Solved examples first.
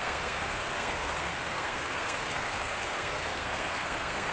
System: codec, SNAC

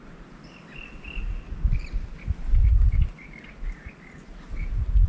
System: none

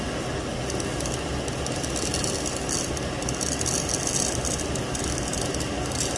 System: none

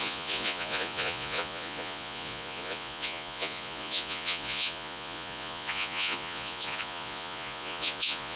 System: vocoder, Vocos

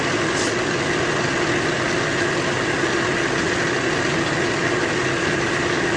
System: none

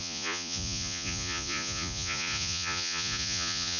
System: vocoder, Vocos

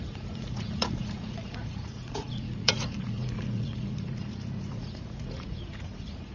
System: vocoder, Vocos